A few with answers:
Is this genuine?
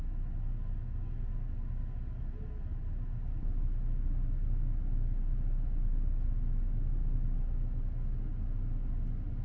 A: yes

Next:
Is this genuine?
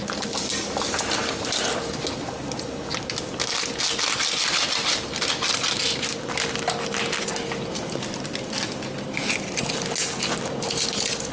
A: yes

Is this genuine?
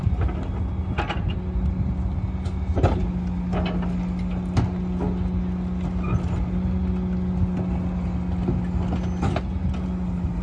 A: yes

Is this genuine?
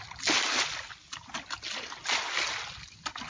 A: yes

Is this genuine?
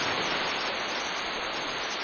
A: yes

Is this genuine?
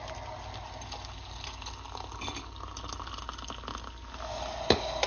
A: yes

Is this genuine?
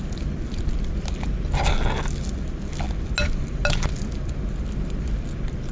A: yes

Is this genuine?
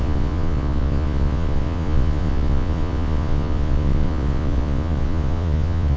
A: no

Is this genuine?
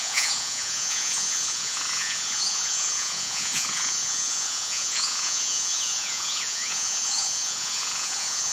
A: no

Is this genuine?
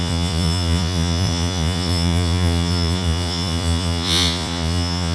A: no